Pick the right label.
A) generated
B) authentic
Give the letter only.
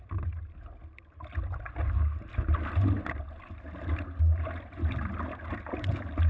B